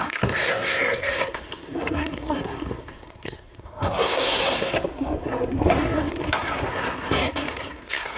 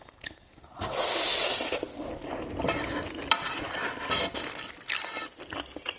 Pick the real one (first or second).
second